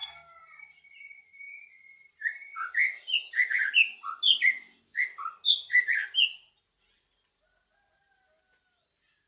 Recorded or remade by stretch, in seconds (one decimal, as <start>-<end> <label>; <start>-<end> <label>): 0.0-9.3 recorded